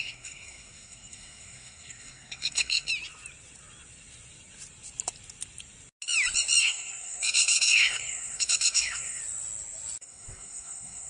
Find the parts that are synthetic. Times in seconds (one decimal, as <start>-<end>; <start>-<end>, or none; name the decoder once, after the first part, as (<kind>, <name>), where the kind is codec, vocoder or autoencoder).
0.0-2.9 (codec, SNAC); 6.6-9.2; 10.0-11.1